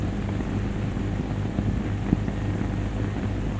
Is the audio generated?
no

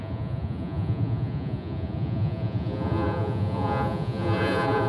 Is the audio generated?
yes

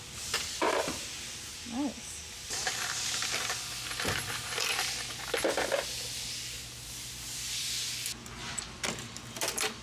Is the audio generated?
no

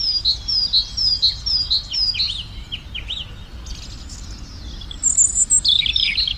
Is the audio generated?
no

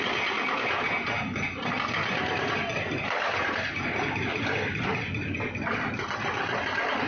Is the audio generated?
no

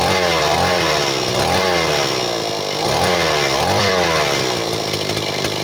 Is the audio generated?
yes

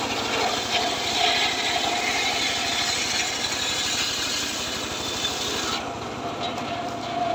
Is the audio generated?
no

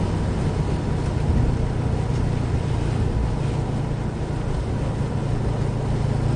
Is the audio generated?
no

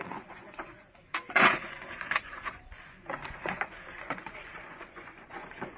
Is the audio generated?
yes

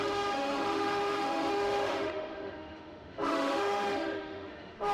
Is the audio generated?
yes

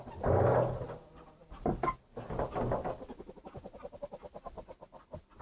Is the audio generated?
no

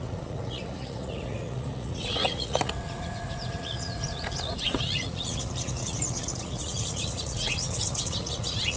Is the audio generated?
yes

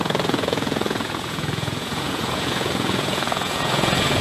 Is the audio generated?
yes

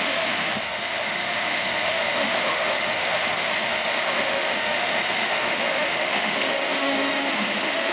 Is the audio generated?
yes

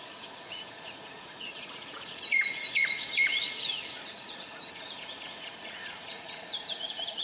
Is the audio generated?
yes